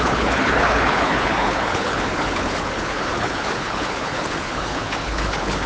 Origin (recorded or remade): remade